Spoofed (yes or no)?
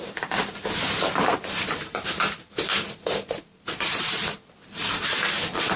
yes